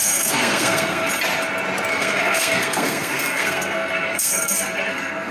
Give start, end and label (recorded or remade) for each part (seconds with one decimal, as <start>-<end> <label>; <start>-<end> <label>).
0.0-1.1 remade; 1.1-1.9 recorded; 1.9-5.3 remade